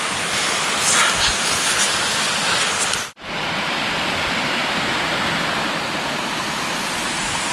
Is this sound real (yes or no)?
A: yes